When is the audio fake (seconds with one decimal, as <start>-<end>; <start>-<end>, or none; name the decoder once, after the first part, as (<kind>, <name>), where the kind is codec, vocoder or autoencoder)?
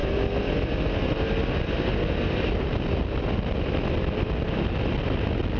none